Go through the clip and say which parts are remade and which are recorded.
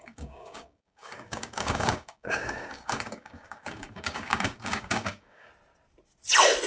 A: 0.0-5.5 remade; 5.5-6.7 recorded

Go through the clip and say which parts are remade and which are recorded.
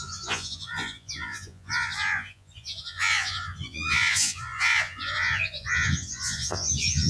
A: 0.0-7.1 remade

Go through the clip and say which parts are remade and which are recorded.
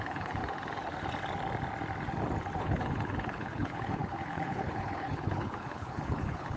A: 0.0-0.4 remade; 0.4-2.6 recorded; 2.6-6.6 remade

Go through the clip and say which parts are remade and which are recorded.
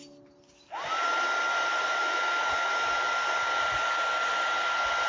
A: 0.0-2.0 recorded; 2.0-2.9 remade; 2.9-5.1 recorded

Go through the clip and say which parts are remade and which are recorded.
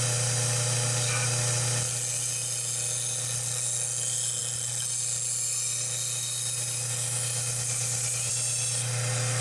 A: 0.0-9.4 recorded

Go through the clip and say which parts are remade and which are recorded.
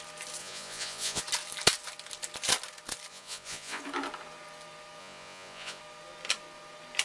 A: 0.0-0.4 recorded; 0.4-1.2 remade; 1.2-3.1 recorded; 3.1-3.8 remade; 3.8-5.0 recorded; 5.0-5.8 remade; 5.8-7.0 recorded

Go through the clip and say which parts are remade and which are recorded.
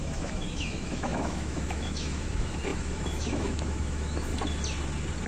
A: 0.0-4.3 remade; 4.3-5.3 recorded